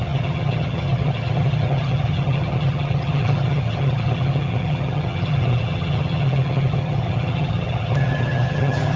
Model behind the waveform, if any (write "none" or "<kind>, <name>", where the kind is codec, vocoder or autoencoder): vocoder, HiFi-GAN